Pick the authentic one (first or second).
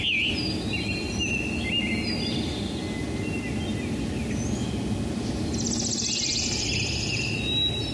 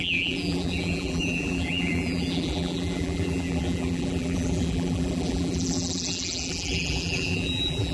first